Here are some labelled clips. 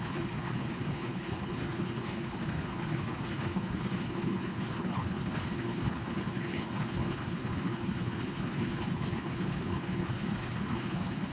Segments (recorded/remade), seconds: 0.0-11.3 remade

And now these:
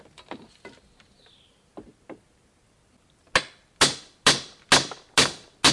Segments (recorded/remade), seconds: 0.0-5.7 recorded

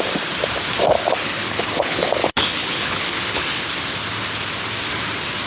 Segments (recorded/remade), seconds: 0.0-1.1 recorded; 1.1-3.6 remade; 3.6-5.5 recorded

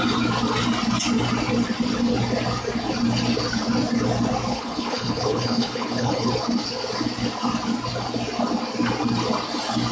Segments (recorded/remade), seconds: 0.0-4.5 recorded; 4.5-6.3 remade; 6.3-9.9 recorded

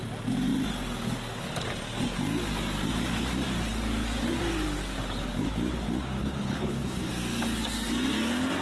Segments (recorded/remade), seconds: 0.0-6.2 recorded; 6.2-7.1 remade; 7.1-8.6 recorded